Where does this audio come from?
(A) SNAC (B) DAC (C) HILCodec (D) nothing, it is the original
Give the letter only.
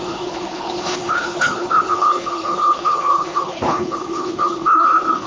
C